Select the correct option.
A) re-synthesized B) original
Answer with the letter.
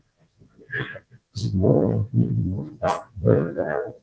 A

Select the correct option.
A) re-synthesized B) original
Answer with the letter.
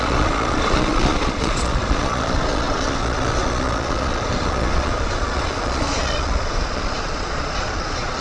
A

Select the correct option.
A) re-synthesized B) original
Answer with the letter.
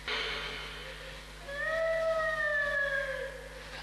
B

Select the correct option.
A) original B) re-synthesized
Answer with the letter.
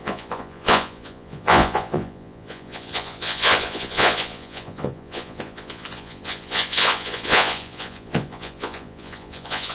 B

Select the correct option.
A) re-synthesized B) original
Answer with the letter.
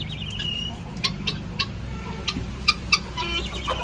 B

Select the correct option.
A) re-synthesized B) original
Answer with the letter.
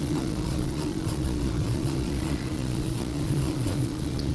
A